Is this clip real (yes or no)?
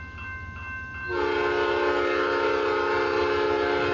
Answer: yes